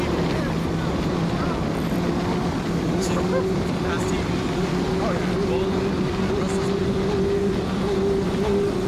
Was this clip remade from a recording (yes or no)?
no